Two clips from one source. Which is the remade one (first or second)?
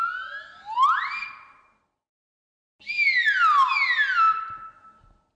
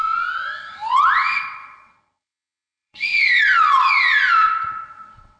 second